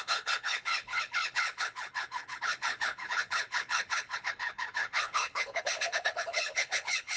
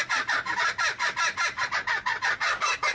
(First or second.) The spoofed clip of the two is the first